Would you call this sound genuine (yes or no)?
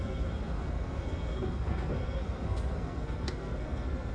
no